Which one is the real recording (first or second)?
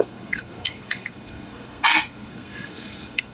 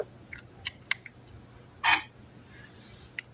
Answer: second